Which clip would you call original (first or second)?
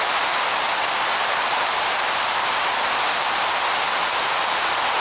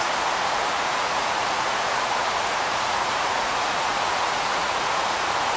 first